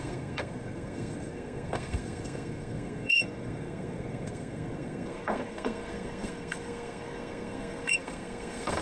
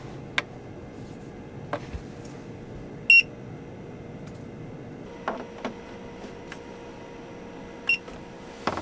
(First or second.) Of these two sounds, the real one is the second